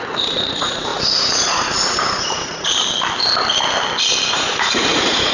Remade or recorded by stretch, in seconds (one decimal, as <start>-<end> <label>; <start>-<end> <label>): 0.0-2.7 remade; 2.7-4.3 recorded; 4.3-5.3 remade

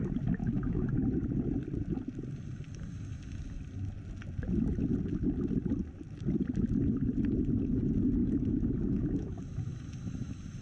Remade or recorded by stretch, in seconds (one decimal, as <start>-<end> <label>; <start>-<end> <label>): 0.0-0.4 recorded; 0.4-0.9 remade; 0.9-8.2 recorded; 8.2-9.4 remade; 9.4-10.6 recorded

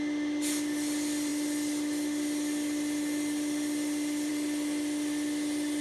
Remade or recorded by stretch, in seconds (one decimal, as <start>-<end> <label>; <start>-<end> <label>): 0.0-5.8 recorded